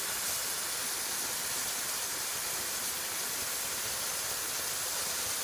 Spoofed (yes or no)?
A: no